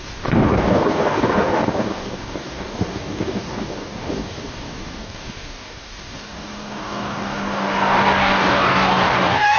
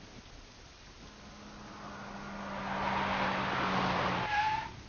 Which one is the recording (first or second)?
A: second